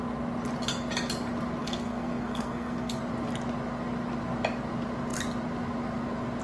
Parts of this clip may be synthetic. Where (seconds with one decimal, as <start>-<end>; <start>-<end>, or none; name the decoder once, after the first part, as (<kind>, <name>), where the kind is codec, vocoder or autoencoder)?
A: 1.6-3.0 (codec, SNAC)